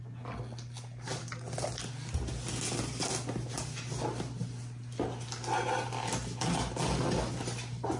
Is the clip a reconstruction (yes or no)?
no